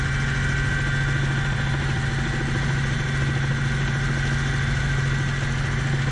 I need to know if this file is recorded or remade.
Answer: recorded